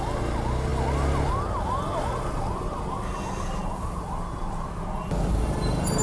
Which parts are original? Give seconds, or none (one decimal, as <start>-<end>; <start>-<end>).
0.0-6.0